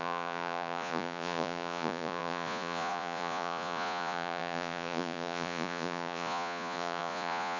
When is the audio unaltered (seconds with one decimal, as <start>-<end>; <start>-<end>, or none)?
none